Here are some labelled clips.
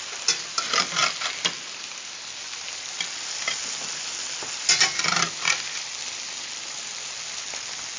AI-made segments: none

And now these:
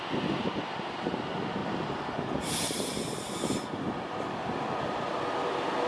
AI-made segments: none

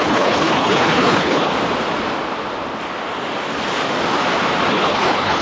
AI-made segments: 0.0-1.5; 4.7-5.4

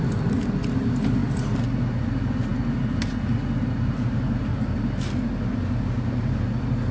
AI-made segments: none

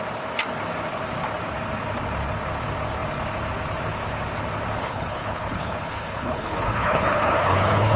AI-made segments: 4.8-8.0

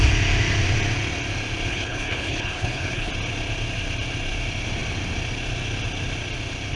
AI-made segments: 1.7-3.1